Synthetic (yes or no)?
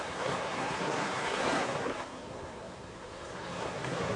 yes